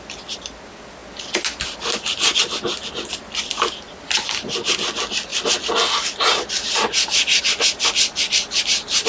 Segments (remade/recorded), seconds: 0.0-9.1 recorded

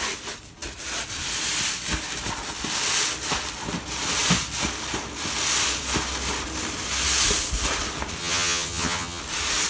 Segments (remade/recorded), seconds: 0.0-8.2 recorded; 8.2-9.2 remade; 9.2-9.7 recorded

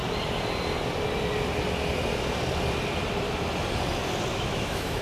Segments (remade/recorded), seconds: 0.0-4.3 recorded; 4.3-5.0 remade